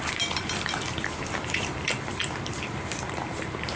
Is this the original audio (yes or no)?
no